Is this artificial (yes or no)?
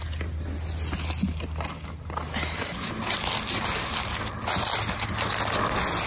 no